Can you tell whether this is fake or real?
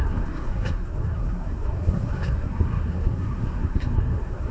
fake